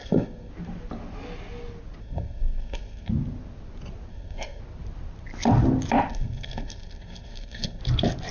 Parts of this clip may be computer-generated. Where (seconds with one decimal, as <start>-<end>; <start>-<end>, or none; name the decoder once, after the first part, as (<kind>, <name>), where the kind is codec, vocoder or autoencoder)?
0.0-0.5 (codec, SNAC); 2.0-3.1; 4.1-4.6; 6.1-7.8